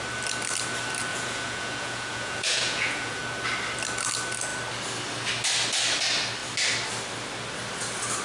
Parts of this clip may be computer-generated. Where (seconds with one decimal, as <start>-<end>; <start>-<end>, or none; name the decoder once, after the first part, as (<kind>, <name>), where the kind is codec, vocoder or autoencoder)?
1.1-3.2 (vocoder, Vocos)